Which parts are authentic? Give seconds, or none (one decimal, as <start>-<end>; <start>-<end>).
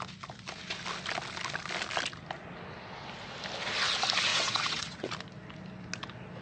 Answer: 0.0-4.3; 5.1-6.4